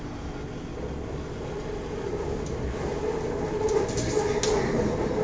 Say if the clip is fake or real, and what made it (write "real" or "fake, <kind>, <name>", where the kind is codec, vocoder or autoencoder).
real